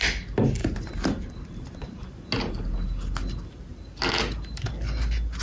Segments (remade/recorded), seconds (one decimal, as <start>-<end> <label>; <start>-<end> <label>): 0.0-5.4 recorded

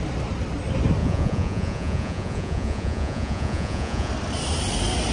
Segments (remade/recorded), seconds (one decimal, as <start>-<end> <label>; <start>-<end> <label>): 0.0-1.0 recorded; 1.0-4.1 remade; 4.1-5.1 recorded